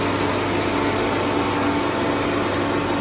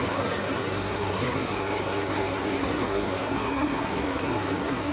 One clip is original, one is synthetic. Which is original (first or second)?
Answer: first